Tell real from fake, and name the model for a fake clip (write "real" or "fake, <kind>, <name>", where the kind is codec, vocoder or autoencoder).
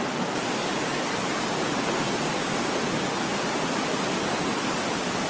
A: real